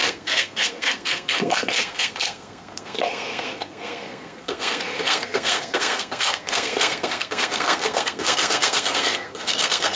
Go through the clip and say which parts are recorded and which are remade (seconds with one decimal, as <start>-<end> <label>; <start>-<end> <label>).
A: 0.0-10.0 remade